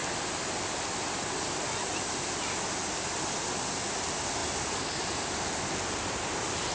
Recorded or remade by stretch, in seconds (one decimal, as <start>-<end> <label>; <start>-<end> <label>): 0.0-6.7 recorded